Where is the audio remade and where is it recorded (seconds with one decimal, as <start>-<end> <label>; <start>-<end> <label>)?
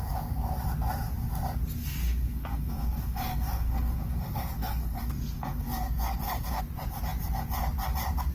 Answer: 0.0-1.8 recorded; 1.8-6.6 remade; 6.6-8.3 recorded